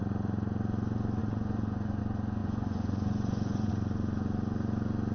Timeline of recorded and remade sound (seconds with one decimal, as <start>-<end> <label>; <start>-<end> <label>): 0.0-1.2 recorded; 1.2-2.0 remade; 2.0-2.4 recorded; 2.4-3.7 remade; 3.7-5.1 recorded